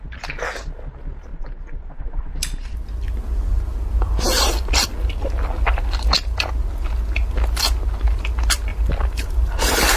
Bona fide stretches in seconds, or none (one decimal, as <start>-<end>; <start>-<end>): 0.0-1.3; 2.3-8.7; 9.5-10.0

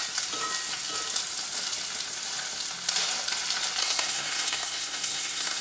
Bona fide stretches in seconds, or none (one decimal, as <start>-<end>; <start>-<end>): 0.0-3.8

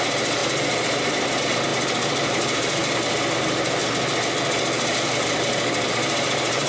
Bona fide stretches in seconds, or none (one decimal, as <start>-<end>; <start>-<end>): 0.4-1.1; 1.7-2.3; 2.8-3.4; 3.8-5.5

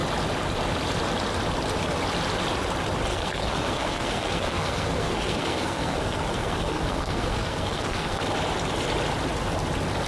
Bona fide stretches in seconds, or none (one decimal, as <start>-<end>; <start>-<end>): 0.0-3.1; 8.2-10.1

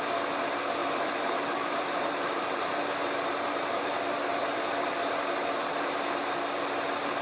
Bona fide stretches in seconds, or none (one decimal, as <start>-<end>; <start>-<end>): 0.0-0.8; 2.8-4.3; 5.1-7.2

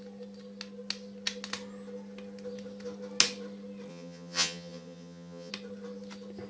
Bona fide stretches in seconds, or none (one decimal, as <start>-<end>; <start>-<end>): 0.0-3.9; 5.5-6.5